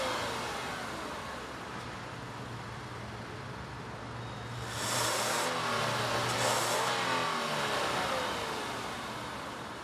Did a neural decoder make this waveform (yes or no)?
no